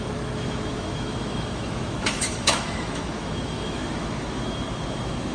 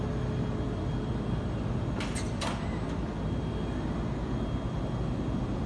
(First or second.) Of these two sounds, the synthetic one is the first